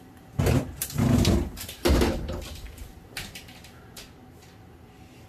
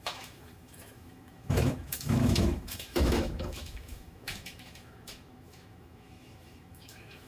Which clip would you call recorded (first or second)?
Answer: first